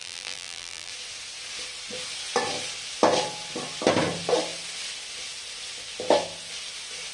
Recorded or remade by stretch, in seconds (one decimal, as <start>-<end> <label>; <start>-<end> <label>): 0.0-0.9 remade; 0.9-7.1 recorded